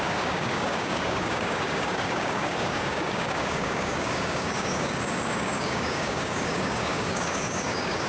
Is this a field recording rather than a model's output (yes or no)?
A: no